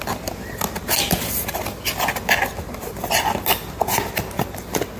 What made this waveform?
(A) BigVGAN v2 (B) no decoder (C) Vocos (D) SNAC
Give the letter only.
B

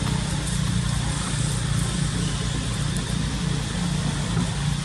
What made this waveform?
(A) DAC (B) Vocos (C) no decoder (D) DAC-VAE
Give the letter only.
C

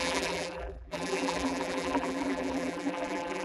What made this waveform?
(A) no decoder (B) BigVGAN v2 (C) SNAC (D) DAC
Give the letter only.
B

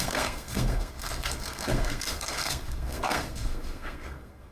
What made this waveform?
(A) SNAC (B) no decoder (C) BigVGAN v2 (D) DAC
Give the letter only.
A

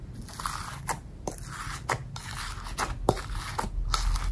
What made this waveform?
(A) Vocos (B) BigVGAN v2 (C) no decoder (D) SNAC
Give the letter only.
C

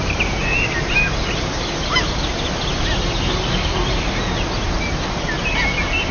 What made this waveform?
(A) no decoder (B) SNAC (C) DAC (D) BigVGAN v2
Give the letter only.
A